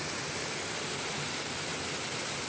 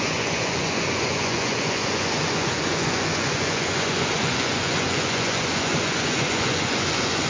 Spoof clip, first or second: second